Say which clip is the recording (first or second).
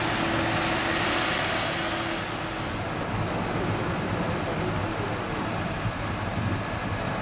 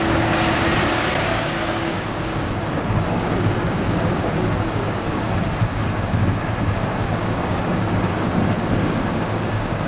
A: first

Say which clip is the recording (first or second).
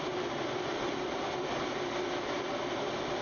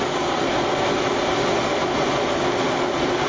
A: second